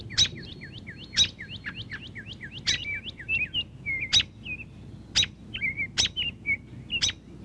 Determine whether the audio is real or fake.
real